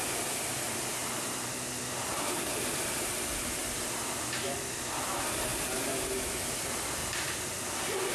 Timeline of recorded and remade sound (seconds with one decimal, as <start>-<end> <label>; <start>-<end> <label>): 0.0-3.3 recorded; 3.3-4.3 remade; 4.3-7.0 recorded; 7.0-8.1 remade